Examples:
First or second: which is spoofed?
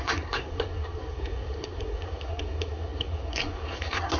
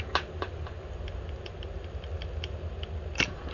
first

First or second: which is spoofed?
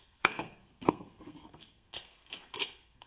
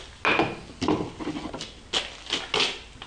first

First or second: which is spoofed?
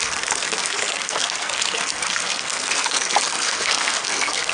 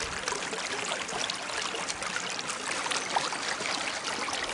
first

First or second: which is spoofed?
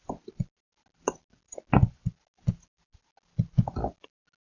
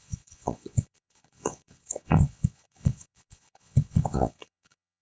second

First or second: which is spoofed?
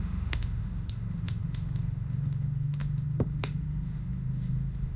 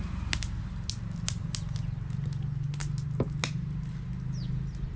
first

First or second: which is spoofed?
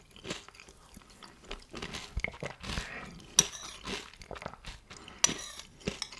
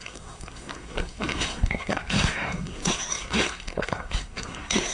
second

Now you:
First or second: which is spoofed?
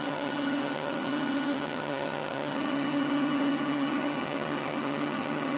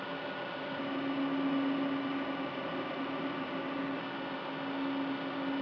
first